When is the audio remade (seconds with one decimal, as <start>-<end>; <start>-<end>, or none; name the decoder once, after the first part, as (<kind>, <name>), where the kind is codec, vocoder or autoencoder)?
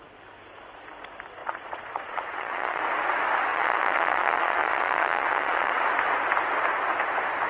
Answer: 1.4-2.8 (vocoder, Vocos); 3.5-5.8